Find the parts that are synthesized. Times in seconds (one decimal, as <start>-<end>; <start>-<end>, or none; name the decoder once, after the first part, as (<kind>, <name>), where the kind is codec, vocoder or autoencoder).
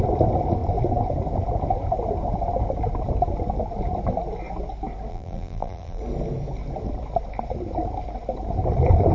5.1-6.0 (vocoder, BigVGAN v2)